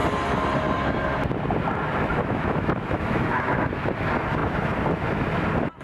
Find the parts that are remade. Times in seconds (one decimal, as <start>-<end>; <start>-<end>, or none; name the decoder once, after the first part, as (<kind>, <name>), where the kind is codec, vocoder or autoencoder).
2.1-3.7 (autoencoder, DAC-VAE)